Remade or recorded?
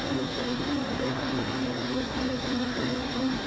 remade